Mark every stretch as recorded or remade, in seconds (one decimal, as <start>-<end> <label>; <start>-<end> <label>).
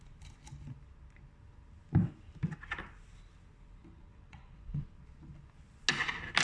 0.0-4.1 recorded; 4.1-4.8 remade; 4.8-6.4 recorded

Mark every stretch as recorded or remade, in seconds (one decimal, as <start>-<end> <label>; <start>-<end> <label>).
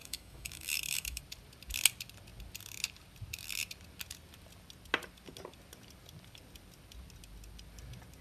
0.0-1.2 remade; 1.2-8.2 recorded